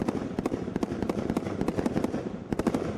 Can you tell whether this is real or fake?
real